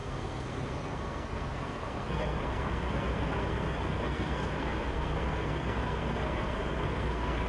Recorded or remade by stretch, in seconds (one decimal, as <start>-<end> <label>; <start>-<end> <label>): 0.0-7.5 remade